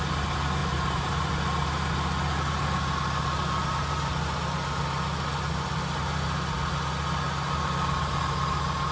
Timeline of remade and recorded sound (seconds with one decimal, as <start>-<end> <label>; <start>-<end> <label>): 0.0-0.6 recorded; 0.6-1.3 remade; 1.3-8.9 recorded

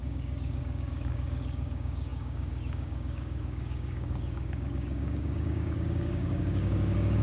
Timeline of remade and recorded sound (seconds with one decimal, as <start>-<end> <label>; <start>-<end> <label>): 0.0-7.2 remade

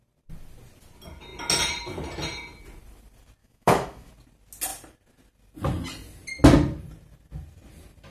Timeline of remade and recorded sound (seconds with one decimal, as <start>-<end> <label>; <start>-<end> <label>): 0.0-3.4 recorded; 3.4-4.1 remade; 4.1-8.1 recorded

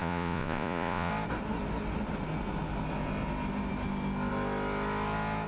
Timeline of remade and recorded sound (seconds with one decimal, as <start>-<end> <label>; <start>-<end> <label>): 0.0-1.1 remade; 1.1-5.5 recorded

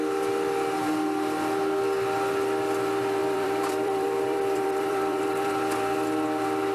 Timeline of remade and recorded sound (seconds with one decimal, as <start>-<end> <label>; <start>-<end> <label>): 0.0-3.2 recorded; 3.2-5.5 remade; 5.5-6.7 recorded

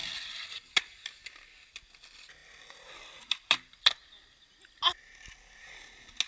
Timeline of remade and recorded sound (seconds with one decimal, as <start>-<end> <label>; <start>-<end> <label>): 0.0-6.3 recorded